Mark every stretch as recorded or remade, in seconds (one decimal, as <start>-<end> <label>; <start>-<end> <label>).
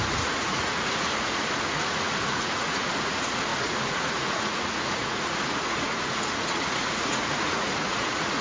0.0-8.4 remade